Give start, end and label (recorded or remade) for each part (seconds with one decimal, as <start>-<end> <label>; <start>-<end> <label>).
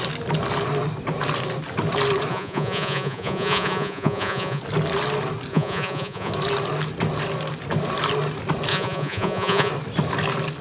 0.0-2.3 recorded; 2.3-4.6 remade; 4.6-5.5 recorded; 5.5-6.3 remade; 6.3-8.7 recorded; 8.7-9.7 remade; 9.7-10.6 recorded